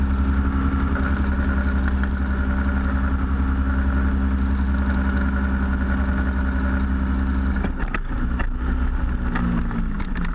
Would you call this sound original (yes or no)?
yes